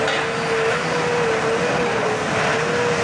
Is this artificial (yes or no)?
no